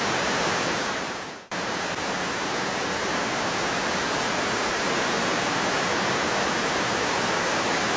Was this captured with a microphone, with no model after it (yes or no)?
yes